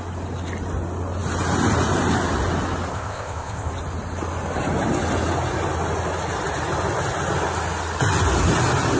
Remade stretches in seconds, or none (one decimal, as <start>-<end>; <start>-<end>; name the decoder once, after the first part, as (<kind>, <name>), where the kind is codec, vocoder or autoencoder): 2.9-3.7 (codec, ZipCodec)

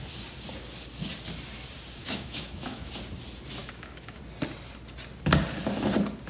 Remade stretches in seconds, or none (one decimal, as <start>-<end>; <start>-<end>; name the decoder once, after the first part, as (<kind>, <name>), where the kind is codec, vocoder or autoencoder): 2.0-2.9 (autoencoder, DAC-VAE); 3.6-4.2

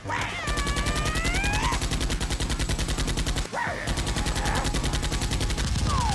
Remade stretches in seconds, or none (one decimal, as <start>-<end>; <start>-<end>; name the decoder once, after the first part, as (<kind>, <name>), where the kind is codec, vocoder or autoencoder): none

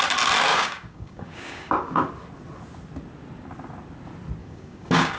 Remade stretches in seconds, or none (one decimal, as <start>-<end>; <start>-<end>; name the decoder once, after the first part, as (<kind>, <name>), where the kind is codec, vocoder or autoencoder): 0.5-2.0 (codec, DAC); 4.4-5.2

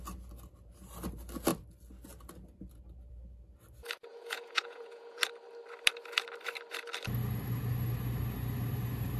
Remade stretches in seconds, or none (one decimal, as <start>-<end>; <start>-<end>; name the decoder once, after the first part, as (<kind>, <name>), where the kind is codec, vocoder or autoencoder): 4.1-5.2 (vocoder, Vocos)